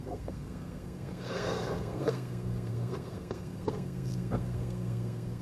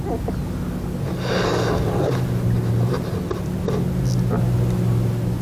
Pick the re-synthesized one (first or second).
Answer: first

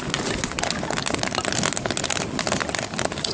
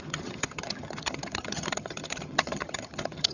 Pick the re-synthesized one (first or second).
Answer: second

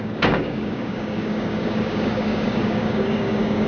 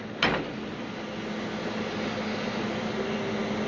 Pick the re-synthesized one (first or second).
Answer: first